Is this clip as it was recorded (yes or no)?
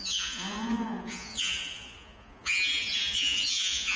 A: no